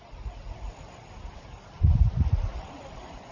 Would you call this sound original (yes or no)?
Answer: yes